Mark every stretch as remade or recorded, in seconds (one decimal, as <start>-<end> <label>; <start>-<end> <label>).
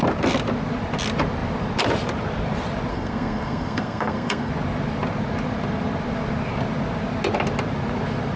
0.0-2.9 recorded; 2.9-4.5 remade; 4.5-8.4 recorded